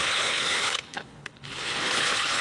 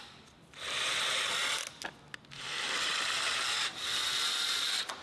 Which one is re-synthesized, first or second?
first